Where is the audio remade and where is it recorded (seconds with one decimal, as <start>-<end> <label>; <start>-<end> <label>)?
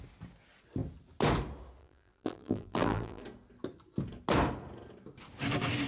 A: 0.0-1.8 recorded; 1.8-3.2 remade; 3.2-5.9 recorded